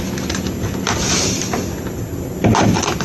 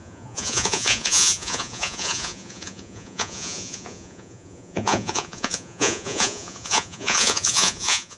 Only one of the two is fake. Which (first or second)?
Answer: second